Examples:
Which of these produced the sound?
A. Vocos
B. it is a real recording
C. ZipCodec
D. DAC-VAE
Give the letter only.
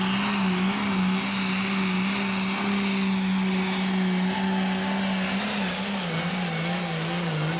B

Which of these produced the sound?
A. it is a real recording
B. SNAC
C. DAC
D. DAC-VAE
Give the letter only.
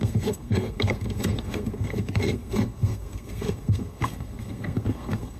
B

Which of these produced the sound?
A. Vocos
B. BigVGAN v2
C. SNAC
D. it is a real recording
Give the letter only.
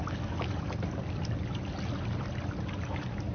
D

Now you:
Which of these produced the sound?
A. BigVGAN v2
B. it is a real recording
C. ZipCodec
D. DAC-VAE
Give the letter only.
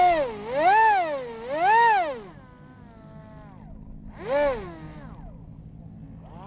B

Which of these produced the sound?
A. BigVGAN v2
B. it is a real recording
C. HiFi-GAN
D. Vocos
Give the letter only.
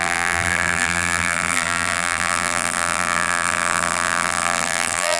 A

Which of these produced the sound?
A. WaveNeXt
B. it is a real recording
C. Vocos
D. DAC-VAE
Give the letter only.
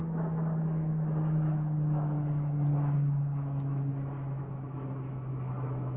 D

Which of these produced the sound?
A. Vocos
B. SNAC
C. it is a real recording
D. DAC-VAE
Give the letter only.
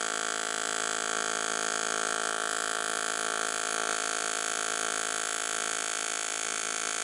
C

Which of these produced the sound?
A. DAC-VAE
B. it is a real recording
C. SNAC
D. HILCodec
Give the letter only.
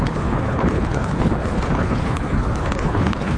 D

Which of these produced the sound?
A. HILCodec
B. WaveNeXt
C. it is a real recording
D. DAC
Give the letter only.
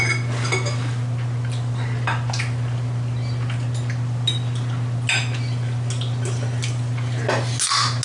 C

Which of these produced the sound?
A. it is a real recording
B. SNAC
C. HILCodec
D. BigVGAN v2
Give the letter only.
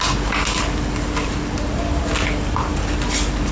A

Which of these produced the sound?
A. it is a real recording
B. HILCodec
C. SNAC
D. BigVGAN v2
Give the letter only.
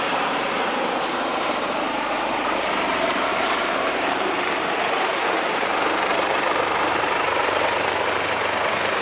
D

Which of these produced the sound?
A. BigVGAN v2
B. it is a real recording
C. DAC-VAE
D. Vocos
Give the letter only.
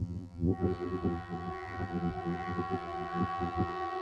A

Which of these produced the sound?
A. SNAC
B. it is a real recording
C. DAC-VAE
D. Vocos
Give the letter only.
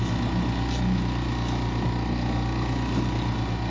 B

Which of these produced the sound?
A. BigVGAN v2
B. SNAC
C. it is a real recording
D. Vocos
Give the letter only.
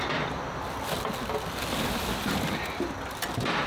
C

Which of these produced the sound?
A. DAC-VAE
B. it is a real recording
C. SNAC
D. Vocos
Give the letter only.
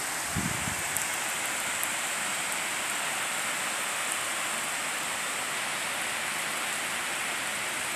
B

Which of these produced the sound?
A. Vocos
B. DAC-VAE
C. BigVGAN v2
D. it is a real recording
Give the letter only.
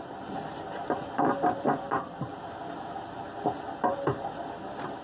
D